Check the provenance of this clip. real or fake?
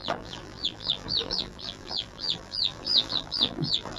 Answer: fake